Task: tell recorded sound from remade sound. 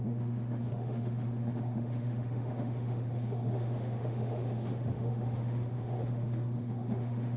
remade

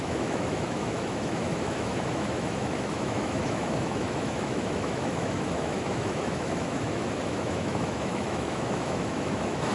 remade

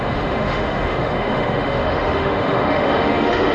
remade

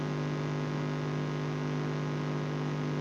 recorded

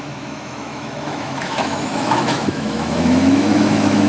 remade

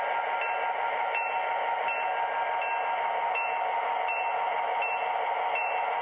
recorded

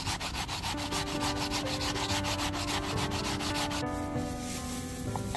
recorded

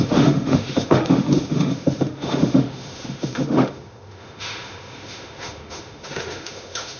remade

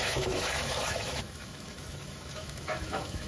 remade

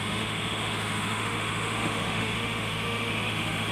remade